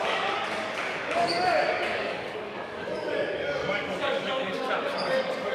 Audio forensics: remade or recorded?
remade